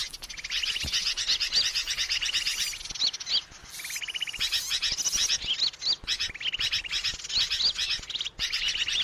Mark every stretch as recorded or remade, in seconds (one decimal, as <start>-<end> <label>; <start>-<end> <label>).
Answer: 0.0-9.0 recorded